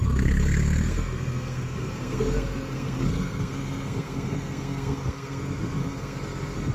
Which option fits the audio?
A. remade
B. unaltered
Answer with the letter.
A